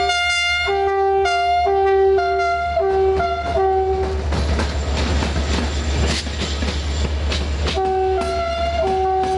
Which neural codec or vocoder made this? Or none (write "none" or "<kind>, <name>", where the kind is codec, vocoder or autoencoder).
none